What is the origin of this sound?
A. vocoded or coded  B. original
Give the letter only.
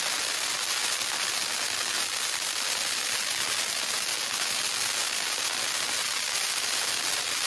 B